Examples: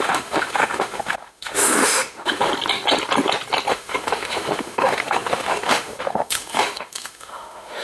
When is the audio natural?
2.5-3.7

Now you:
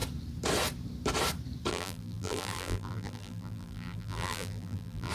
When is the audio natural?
0.0-1.7

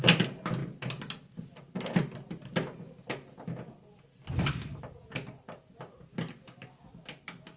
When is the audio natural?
0.0-7.6